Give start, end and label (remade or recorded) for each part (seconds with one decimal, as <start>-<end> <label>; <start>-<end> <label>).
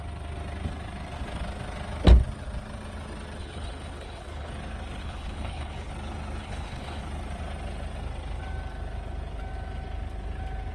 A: 0.0-3.4 recorded; 3.4-4.5 remade; 4.5-5.0 recorded; 5.0-5.9 remade; 5.9-6.4 recorded; 6.4-7.0 remade; 7.0-10.7 recorded